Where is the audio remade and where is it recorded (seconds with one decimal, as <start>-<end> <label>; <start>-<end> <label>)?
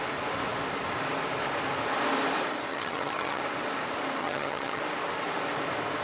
0.0-2.7 recorded; 2.7-3.4 remade; 3.4-4.2 recorded; 4.2-4.8 remade; 4.8-6.0 recorded